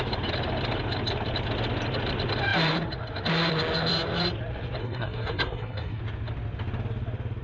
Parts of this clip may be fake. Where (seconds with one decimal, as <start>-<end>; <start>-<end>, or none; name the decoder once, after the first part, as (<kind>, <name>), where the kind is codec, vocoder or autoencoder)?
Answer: 4.8-6.0 (codec, SNAC)